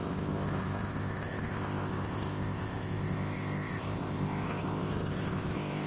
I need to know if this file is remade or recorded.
remade